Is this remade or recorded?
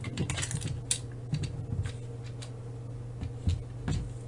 recorded